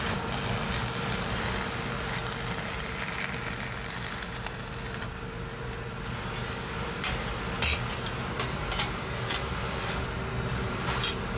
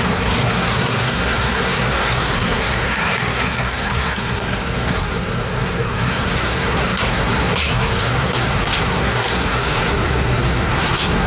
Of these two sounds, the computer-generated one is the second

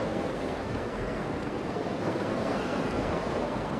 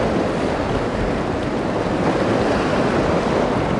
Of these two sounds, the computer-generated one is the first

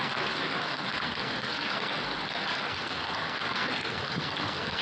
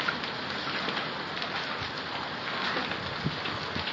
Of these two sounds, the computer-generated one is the first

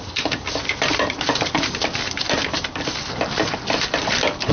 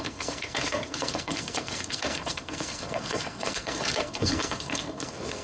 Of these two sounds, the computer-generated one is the second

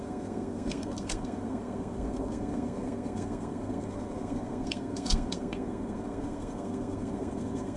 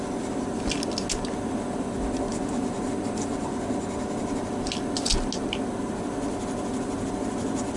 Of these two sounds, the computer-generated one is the first